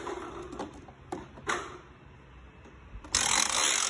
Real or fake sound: real